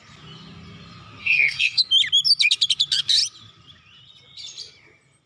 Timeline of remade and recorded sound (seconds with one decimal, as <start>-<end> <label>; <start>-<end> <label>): 0.0-1.2 recorded; 1.2-1.8 remade; 1.8-5.3 recorded